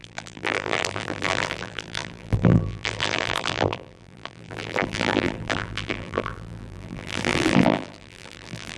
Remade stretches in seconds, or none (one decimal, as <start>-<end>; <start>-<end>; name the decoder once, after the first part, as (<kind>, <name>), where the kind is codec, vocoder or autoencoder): 0.0-8.8 (vocoder, BigVGAN v2)